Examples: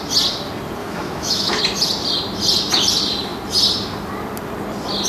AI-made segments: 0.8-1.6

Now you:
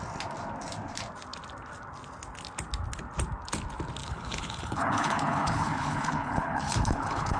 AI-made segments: 4.0-7.4